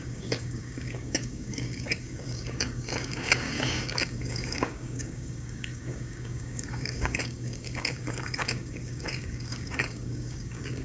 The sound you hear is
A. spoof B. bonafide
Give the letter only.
A